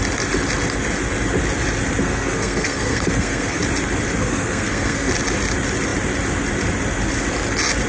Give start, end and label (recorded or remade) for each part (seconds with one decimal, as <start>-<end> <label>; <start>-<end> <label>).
0.0-2.0 recorded; 2.0-3.6 remade; 3.6-4.2 recorded; 4.2-5.1 remade; 5.1-7.9 recorded